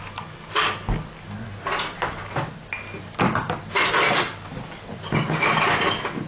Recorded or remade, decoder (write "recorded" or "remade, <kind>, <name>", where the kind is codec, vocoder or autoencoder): recorded